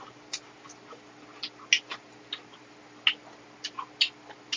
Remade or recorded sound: recorded